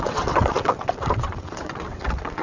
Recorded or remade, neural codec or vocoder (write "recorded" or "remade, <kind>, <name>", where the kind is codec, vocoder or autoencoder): remade, vocoder, WaveNeXt